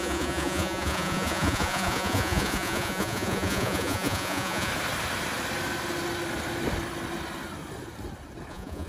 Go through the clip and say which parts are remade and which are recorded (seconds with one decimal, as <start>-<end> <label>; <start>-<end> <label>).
0.0-4.7 remade; 4.7-8.5 recorded; 8.5-8.9 remade